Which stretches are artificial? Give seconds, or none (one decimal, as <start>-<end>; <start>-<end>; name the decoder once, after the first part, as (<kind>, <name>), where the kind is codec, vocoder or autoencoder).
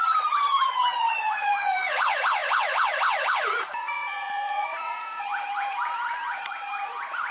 0.0-7.3 (vocoder, Vocos)